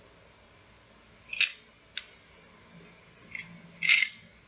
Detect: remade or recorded recorded